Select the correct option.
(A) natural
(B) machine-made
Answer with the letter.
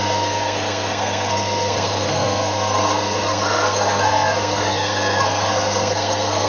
B